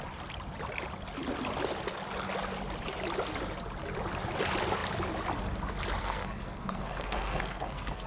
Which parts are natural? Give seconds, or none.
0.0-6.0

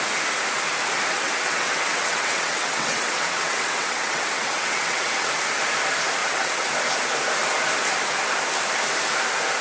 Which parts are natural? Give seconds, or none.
0.0-1.1; 5.3-6.2; 6.7-9.6

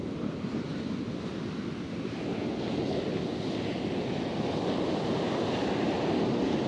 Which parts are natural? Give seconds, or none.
0.0-6.7

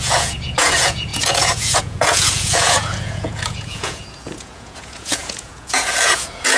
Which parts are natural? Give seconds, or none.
none

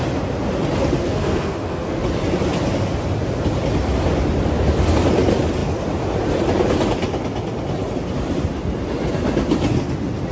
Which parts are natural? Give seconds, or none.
0.0-1.0; 2.0-10.3

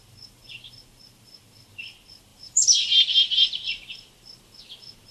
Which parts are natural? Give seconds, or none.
0.0-2.3; 4.6-5.1

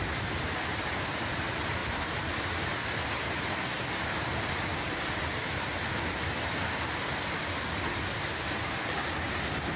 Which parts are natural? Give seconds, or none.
0.0-9.8